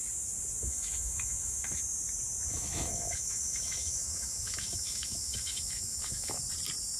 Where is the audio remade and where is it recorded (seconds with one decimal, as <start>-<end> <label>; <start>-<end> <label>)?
0.0-0.6 recorded; 0.6-1.8 remade; 1.8-2.5 recorded; 2.5-6.4 remade; 6.4-7.0 recorded